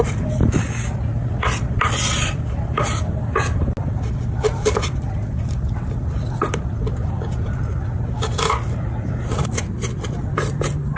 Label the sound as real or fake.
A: real